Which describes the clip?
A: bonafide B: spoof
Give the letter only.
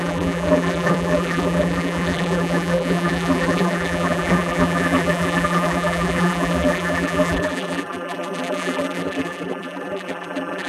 B